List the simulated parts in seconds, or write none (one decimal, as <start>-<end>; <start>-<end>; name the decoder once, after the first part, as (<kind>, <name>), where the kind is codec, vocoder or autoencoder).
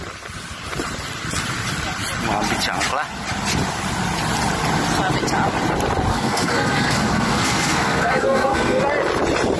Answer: 6.1-8.8 (codec, SNAC)